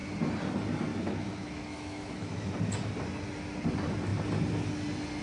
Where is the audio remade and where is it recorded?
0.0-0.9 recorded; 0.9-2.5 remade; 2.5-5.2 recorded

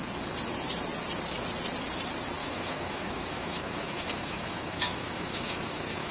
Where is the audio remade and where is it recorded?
0.0-2.4 recorded; 2.4-6.1 remade

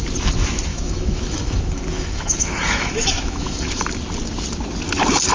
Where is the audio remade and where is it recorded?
0.0-0.7 recorded; 0.7-3.9 remade; 3.9-5.3 recorded

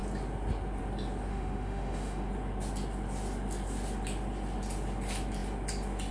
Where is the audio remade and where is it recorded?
0.0-1.3 recorded; 1.3-2.3 remade; 2.3-6.1 recorded

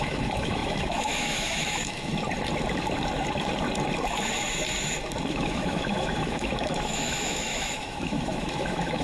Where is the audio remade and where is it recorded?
0.0-2.1 remade; 2.1-5.3 recorded; 5.3-9.0 remade